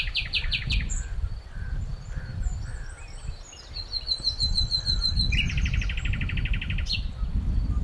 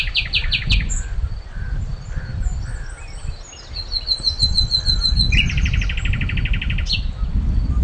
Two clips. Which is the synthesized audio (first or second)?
first